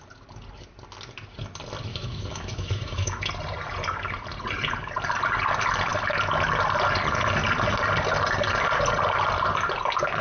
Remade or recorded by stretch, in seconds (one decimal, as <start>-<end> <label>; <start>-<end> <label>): 0.0-1.9 recorded; 1.9-3.3 remade; 3.3-10.2 recorded